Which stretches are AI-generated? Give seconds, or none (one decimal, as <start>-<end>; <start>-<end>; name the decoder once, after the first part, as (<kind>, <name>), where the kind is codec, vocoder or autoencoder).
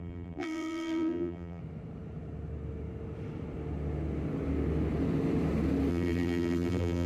0.0-1.6 (vocoder, BigVGAN v2); 5.9-7.1